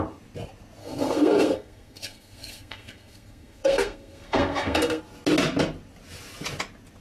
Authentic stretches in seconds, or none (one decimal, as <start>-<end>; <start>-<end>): 0.0-0.8; 5.0-7.0